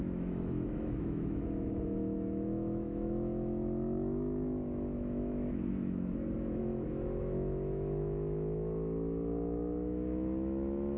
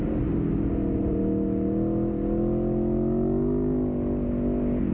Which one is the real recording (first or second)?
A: second